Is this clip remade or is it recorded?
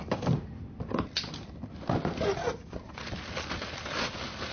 recorded